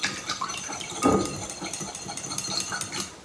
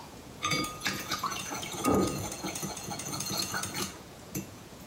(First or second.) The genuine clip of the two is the first